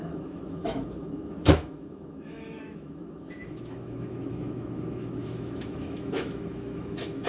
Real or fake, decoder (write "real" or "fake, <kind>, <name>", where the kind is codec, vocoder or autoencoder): fake, autoencoder, DAC-VAE